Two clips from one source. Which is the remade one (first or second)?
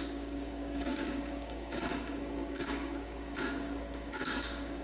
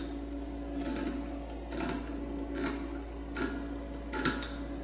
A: first